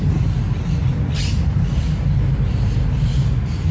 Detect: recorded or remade recorded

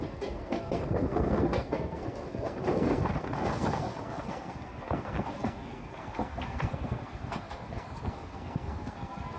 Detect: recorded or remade remade